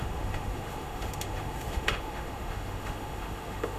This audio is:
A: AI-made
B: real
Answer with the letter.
A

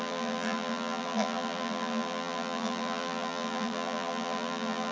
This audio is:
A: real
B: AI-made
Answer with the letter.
B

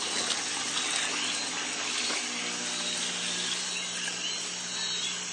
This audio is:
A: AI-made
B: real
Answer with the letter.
B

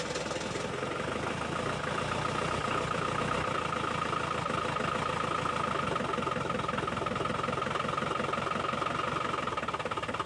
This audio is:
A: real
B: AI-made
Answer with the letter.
A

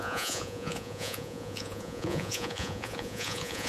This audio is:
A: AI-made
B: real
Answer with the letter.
A